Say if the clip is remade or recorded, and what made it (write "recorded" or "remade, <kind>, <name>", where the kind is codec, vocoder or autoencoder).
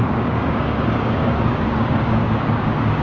remade, codec, DAC